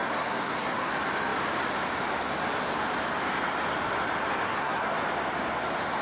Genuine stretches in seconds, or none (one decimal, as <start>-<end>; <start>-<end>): 0.9-4.4; 4.9-6.0